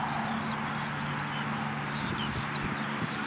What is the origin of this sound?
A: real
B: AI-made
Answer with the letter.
A